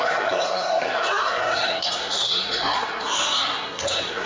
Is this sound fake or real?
fake